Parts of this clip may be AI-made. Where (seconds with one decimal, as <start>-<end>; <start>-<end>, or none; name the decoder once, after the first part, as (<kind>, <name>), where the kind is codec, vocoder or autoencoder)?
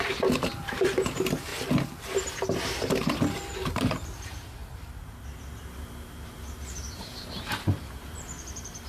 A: 0.0-1.5 (vocoder, BigVGAN v2); 3.7-8.9